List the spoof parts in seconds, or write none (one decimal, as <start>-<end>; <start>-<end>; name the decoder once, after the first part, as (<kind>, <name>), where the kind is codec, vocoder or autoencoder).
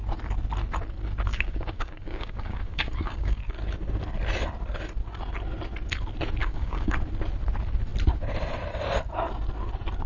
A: 1.3-3.4 (codec, DAC); 6.4-7.0